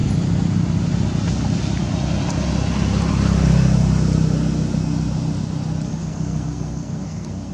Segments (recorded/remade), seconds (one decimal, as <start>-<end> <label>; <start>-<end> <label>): 0.0-6.0 recorded; 6.0-7.5 remade